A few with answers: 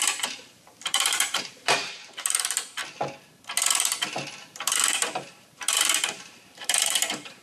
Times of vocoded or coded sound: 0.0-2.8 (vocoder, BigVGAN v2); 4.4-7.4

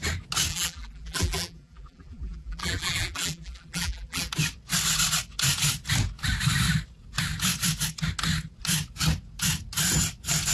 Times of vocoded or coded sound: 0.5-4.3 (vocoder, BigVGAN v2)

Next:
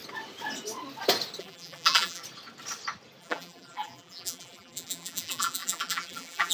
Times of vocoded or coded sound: 1.4-2.2 (vocoder, BigVGAN v2); 3.2-6.5

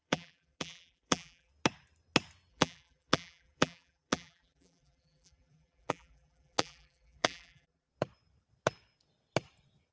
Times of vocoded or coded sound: 0.0-1.5 (vocoder, BigVGAN v2); 2.5-7.9

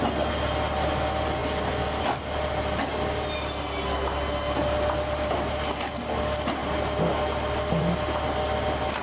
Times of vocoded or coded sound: none